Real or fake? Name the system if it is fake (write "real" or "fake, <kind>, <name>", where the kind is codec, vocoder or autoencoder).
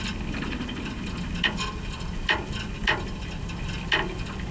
real